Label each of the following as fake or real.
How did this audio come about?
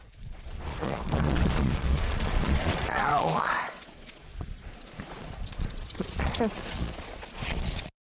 fake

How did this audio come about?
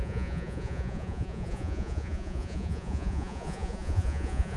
fake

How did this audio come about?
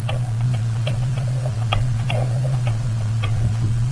fake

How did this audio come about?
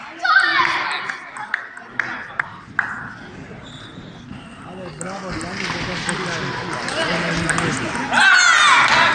real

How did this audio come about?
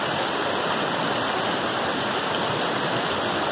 real